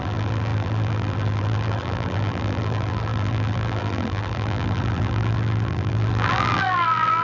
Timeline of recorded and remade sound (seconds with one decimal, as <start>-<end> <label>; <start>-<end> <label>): 0.0-7.2 remade